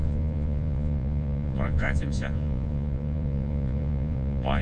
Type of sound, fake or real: fake